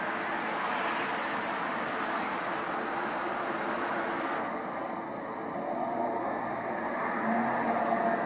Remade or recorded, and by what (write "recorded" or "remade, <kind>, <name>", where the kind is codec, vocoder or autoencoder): recorded